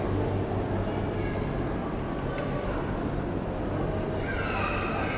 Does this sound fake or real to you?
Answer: real